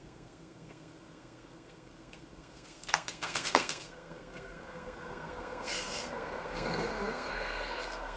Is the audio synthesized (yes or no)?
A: yes